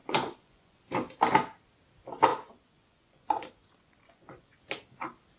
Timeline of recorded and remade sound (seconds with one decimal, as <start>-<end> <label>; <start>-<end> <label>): 0.0-0.8 remade; 0.8-2.3 recorded; 2.3-4.6 remade; 4.6-5.4 recorded